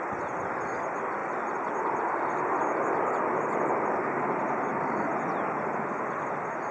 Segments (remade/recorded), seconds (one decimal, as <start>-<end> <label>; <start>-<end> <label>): 0.0-6.7 recorded